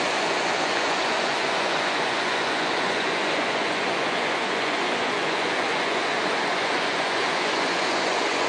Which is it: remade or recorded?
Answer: remade